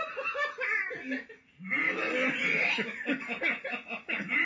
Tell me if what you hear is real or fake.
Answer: real